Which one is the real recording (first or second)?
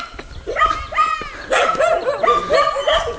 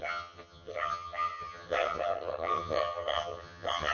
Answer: first